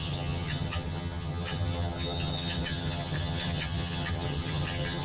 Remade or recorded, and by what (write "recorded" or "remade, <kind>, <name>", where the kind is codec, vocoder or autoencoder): remade, vocoder, HiFi-GAN